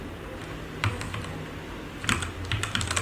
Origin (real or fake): real